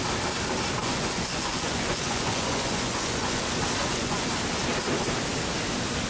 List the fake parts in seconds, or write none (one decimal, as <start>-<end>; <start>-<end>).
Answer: 0.8-3.4; 3.8-4.3